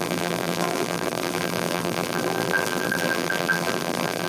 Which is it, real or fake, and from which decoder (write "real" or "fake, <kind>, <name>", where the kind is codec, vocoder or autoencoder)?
fake, vocoder, BigVGAN v2